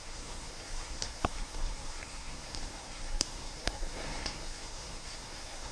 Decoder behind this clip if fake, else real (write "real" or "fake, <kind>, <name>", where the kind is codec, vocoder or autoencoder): fake, codec, SNAC